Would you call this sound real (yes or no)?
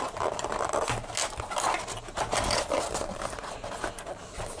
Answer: yes